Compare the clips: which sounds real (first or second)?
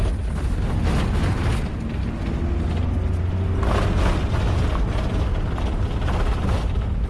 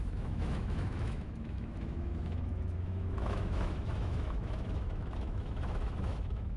first